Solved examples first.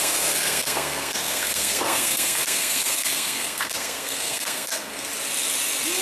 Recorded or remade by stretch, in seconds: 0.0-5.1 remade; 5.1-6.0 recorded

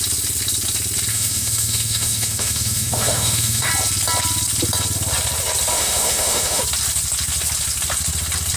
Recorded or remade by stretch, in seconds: 0.0-1.1 recorded; 1.1-3.7 remade; 3.7-5.7 recorded; 5.7-6.6 remade; 6.6-8.6 recorded

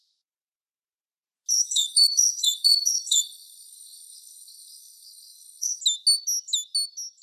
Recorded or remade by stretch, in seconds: 0.0-1.5 recorded; 1.5-5.8 remade; 5.8-7.2 recorded